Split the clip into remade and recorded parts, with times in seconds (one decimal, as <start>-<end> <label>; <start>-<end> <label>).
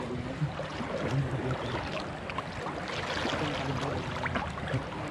0.0-5.1 recorded